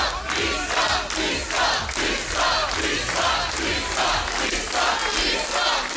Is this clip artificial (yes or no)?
no